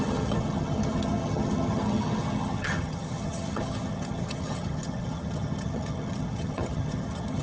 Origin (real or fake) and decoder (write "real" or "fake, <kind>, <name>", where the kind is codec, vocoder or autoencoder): fake, vocoder, HiFi-GAN